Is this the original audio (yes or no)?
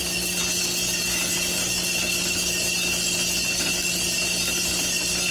yes